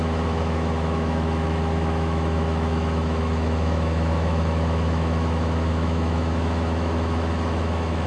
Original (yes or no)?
no